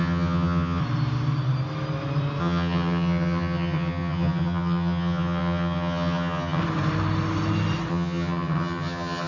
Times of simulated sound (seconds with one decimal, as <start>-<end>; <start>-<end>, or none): 0.0-0.8; 2.4-6.6; 7.9-9.3